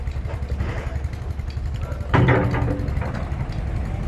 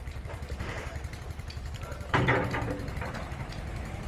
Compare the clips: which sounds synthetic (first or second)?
second